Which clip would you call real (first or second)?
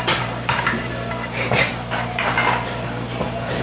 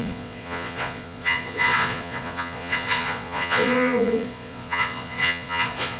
first